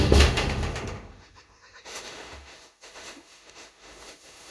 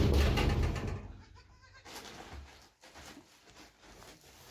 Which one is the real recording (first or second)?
second